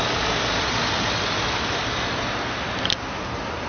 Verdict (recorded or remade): recorded